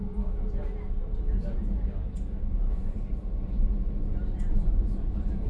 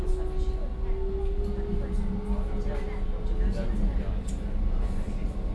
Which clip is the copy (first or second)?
first